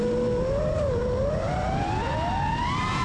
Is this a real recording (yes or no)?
yes